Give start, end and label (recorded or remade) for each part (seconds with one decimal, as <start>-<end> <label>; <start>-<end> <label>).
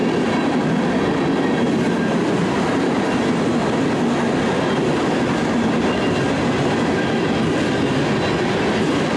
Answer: 0.0-9.2 recorded